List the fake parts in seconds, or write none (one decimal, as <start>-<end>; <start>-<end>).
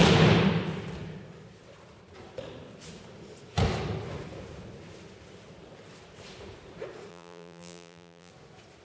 7.1-8.3